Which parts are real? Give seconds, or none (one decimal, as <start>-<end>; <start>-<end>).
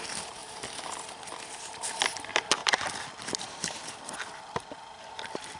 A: 0.0-0.4; 1.1-2.6; 3.1-5.6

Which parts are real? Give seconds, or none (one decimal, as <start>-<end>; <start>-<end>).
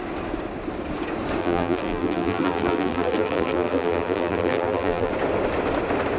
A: 0.0-1.4; 5.1-6.2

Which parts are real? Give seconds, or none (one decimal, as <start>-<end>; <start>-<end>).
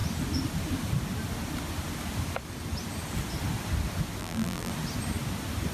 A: 0.0-4.2; 4.7-5.7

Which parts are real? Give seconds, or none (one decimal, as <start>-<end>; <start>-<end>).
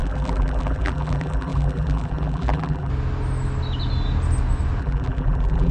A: 2.9-4.8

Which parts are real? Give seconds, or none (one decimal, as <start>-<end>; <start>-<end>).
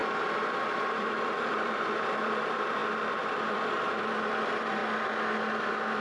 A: 0.0-0.5; 2.8-3.5; 4.8-5.6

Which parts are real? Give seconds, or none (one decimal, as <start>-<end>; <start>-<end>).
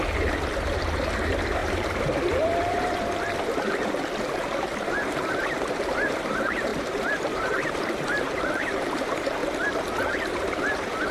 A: 9.4-10.3